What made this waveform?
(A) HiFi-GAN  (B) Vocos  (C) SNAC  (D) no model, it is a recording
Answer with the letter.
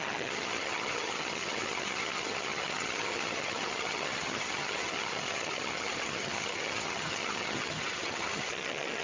A